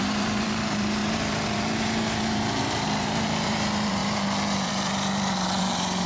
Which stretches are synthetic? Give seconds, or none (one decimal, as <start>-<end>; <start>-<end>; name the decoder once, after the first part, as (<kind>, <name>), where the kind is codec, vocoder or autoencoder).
0.0-6.1 (vocoder, BigVGAN v2)

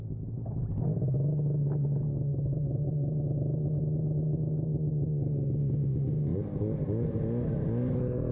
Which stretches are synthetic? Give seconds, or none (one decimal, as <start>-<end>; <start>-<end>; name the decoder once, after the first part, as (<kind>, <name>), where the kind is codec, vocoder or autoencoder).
2.3-3.8 (vocoder, BigVGAN v2); 6.3-7.2

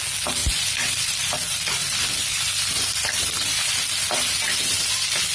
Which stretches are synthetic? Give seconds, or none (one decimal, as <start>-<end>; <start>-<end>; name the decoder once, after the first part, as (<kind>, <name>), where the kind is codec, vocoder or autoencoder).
none

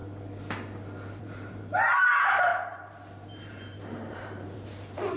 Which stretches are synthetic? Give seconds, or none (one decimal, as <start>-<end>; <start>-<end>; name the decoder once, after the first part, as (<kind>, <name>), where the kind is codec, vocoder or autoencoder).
1.2-5.2 (vocoder, BigVGAN v2)